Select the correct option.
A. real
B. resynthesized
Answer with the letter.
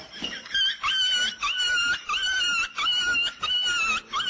A